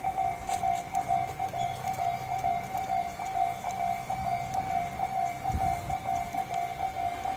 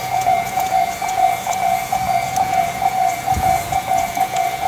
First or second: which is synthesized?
second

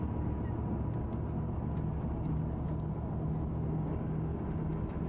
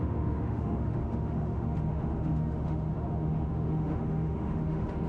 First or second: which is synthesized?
second